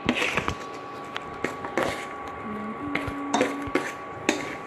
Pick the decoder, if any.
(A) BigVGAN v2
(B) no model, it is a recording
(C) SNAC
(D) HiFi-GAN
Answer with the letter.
B